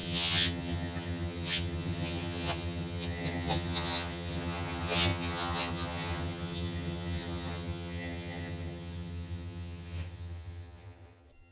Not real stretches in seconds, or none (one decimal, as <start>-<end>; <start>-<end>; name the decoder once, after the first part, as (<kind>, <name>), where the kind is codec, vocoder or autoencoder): 0.0-11.5 (vocoder, HiFi-GAN)